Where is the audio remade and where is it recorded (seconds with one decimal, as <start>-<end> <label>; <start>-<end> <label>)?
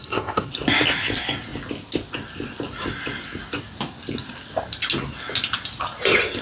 0.0-0.5 remade; 0.5-6.4 recorded